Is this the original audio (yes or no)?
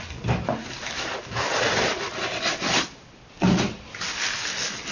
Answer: yes